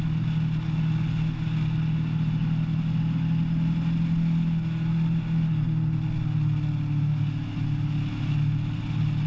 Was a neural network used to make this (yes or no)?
no